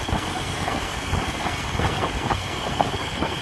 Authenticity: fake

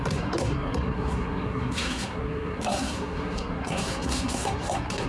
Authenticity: fake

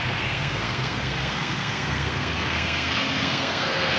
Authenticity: fake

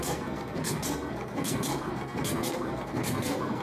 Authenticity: fake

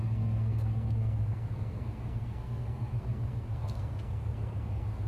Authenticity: fake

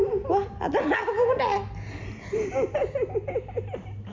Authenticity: real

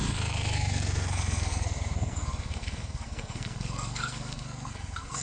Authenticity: fake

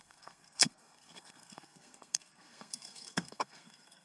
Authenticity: fake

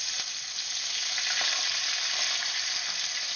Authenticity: real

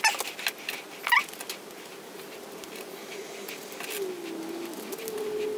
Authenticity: real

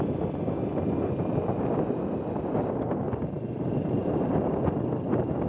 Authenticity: real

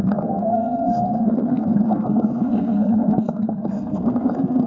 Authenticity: fake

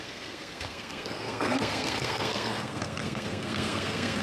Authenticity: fake